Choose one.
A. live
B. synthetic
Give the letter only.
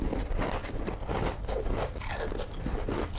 A